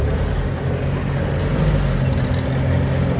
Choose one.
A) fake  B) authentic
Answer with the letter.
B